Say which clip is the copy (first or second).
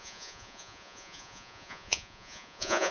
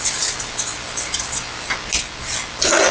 first